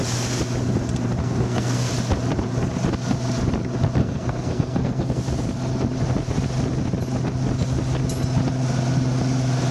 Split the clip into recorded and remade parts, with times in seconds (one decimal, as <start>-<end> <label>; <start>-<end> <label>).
0.0-1.2 recorded; 1.2-1.9 remade; 1.9-4.0 recorded; 4.0-5.2 remade; 5.2-9.7 recorded